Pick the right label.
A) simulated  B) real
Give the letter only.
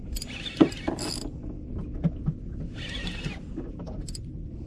B